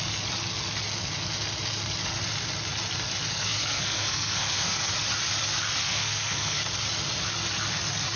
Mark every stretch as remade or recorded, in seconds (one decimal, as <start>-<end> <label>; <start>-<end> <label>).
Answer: 0.0-3.3 recorded; 3.3-4.9 remade; 4.9-5.8 recorded; 5.8-6.6 remade; 6.6-8.2 recorded